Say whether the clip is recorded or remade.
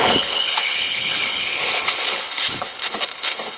remade